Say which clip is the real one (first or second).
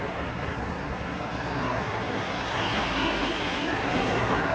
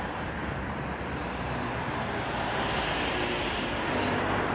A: second